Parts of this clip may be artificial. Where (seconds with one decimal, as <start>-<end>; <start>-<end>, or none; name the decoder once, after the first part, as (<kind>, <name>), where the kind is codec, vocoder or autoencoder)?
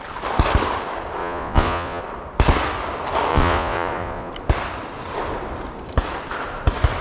1.2-2.0 (vocoder, Vocos); 3.3-4.3